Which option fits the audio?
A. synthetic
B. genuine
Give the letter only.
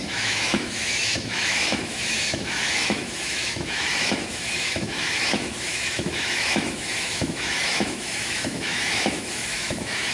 A